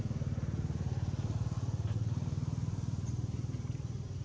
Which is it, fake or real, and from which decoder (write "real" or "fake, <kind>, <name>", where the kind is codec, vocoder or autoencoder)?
real